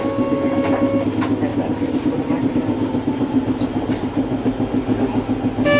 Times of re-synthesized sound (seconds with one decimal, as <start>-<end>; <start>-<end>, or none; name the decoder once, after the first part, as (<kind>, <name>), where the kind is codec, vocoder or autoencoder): 1.5-5.0 (vocoder, BigVGAN v2)